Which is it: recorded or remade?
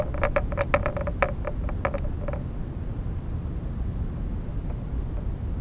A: recorded